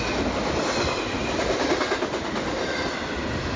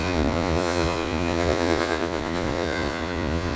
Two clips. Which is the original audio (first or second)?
first